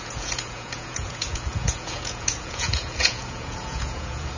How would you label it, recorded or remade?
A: remade